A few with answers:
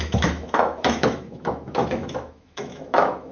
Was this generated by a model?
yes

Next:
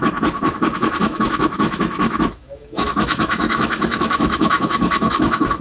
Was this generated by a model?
yes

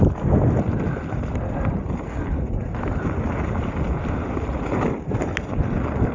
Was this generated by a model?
no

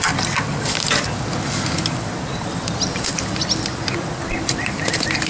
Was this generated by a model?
no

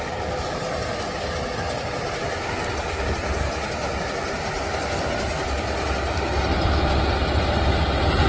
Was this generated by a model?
no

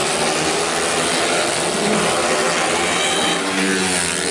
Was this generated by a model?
no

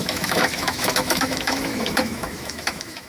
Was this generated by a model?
yes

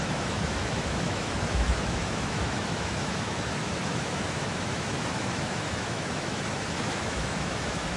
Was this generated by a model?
yes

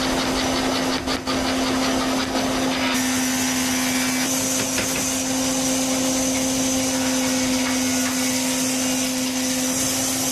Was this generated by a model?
no